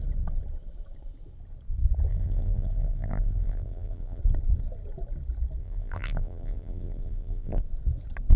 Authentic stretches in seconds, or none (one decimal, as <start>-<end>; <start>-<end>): 0.0-2.1; 4.2-5.6; 7.6-8.4